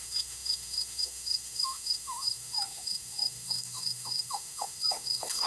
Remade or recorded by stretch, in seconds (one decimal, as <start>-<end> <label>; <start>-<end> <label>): 0.0-5.5 remade